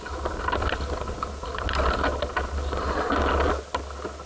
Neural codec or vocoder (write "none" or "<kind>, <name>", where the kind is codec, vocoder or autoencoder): none